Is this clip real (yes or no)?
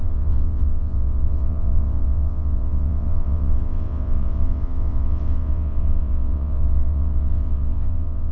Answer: no